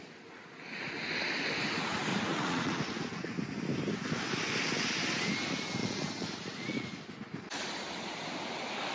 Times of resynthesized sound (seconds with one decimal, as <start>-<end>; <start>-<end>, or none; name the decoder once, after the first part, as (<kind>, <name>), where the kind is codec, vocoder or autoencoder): 2.1-2.8 (vocoder, Vocos); 5.8-7.0